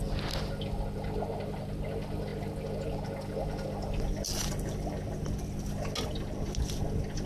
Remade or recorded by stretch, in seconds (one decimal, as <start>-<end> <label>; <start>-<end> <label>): 0.0-7.3 recorded